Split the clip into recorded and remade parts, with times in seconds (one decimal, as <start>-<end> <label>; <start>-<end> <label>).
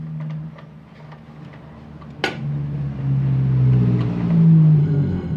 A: 0.0-4.8 recorded; 4.8-5.4 remade